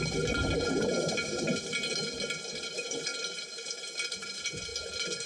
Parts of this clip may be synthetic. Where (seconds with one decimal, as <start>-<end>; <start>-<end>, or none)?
0.0-1.7; 2.6-3.1; 4.1-4.7

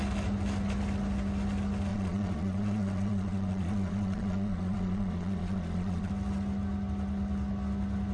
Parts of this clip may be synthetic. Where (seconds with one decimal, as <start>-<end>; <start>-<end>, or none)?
1.9-6.1

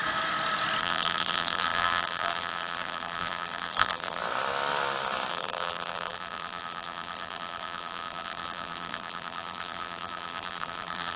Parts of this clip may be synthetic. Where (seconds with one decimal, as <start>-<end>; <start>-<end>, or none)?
0.8-4.2; 5.3-11.2

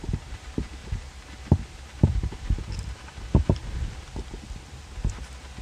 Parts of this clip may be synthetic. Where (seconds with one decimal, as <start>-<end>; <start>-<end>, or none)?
0.0-0.8; 1.6-3.6; 4.6-5.6

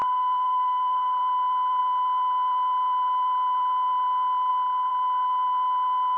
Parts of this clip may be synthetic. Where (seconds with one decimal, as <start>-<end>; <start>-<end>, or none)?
0.0-1.2

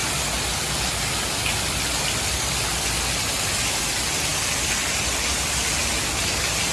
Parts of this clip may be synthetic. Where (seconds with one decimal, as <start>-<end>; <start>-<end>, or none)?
none